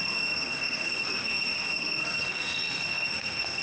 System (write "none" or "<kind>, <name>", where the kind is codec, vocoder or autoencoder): codec, SNAC